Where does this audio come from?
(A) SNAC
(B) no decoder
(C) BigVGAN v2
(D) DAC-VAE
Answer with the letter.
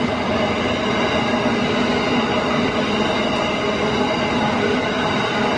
B